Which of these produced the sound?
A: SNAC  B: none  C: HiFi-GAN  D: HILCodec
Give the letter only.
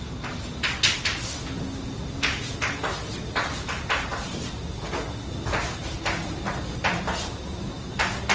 B